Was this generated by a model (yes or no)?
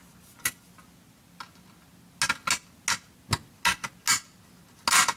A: no